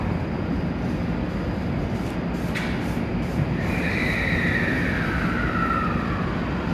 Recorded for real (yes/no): yes